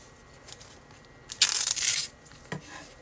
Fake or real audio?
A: real